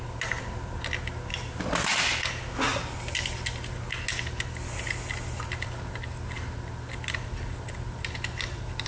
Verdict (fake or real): real